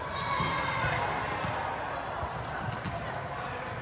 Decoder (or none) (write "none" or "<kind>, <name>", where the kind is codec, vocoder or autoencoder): none